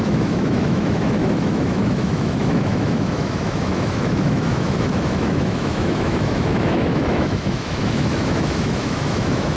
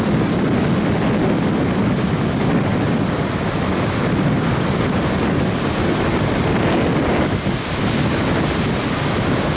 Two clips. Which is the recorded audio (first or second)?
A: second